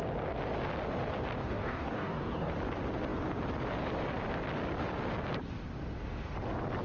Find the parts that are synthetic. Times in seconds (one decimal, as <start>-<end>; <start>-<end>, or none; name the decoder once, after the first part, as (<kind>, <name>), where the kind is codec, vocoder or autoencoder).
1.4-2.5 (codec, DAC)